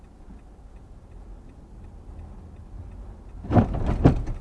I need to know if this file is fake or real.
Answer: real